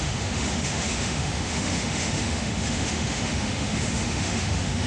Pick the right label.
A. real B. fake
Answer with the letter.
B